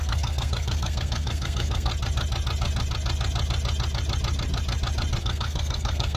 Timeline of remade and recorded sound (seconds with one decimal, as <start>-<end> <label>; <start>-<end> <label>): 0.0-1.9 remade; 1.9-5.2 recorded; 5.2-6.2 remade